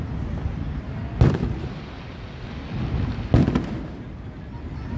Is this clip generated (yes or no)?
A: no